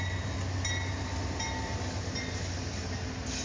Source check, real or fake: real